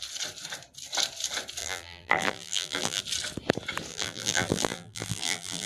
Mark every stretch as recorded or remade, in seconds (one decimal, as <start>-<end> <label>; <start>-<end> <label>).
0.0-1.6 recorded; 1.6-3.0 remade; 3.0-3.9 recorded; 3.9-5.7 remade